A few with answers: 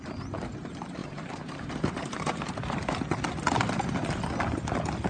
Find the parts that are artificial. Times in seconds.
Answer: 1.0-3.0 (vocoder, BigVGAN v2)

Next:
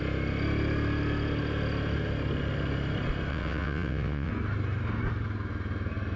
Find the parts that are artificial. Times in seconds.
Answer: 3.3-4.3 (vocoder, WaveNeXt)

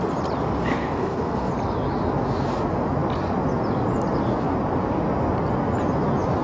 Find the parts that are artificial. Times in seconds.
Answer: 0.7-1.5 (codec, SNAC)

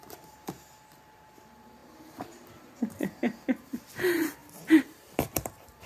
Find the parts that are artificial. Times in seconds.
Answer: 0.0-5.9 (vocoder, BigVGAN v2)

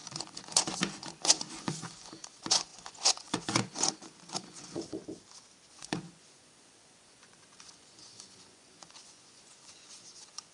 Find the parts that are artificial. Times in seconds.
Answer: 0.0-5.0 (vocoder, Vocos); 5.7-10.5

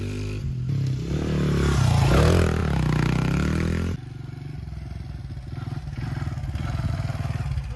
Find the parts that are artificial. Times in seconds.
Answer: none

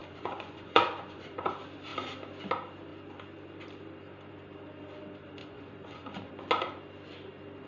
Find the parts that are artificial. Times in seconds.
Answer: 0.0-1.5 (vocoder, Vocos); 5.4-6.3

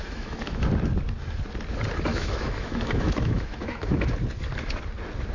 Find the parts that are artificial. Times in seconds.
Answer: 0.0-0.6 (autoencoder, DAC-VAE); 2.1-4.1